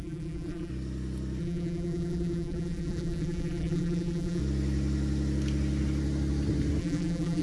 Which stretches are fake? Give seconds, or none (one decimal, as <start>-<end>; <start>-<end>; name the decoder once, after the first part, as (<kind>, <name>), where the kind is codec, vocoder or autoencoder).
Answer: 0.0-0.7 (vocoder, BigVGAN v2); 1.4-4.4; 6.8-7.4